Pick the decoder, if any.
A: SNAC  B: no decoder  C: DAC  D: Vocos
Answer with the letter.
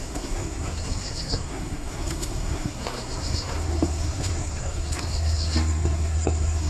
A